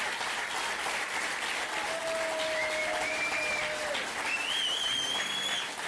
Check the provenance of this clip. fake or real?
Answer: real